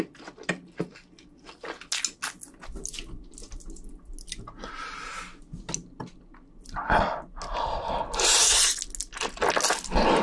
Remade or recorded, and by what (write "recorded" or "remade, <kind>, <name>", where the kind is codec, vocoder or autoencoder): recorded